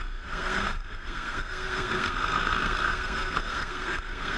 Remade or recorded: remade